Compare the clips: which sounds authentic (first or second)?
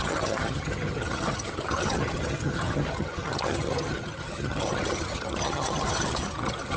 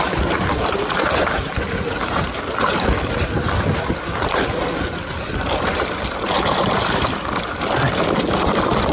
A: second